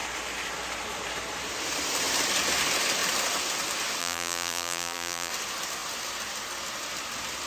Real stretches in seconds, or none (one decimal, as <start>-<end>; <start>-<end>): 0.0-4.0; 5.3-7.5